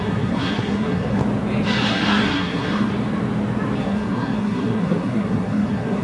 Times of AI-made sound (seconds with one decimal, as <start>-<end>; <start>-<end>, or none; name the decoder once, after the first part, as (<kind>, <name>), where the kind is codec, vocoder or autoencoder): 0.0-1.2 (codec, SNAC); 1.9-2.9; 3.8-6.0